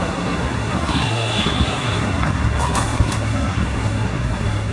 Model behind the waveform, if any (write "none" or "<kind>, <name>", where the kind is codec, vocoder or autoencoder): codec, SNAC